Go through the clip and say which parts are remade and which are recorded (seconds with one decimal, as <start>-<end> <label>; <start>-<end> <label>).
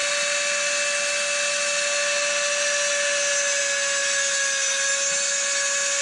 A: 0.0-6.0 recorded